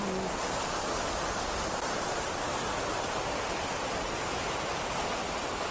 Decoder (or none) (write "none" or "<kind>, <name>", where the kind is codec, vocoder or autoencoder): none